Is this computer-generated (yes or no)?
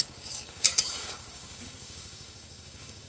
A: yes